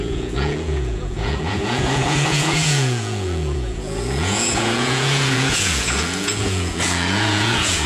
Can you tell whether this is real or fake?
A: fake